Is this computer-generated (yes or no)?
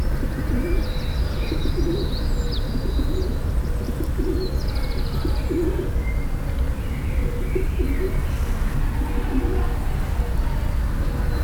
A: no